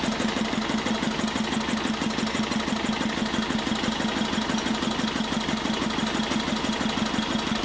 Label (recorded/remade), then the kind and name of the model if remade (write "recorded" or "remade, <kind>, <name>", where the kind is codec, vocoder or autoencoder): recorded